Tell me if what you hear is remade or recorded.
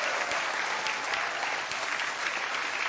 recorded